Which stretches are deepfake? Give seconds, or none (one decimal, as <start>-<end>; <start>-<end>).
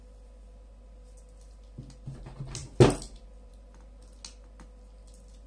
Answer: none